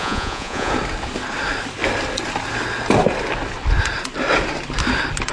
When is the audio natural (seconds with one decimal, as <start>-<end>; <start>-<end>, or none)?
0.7-5.3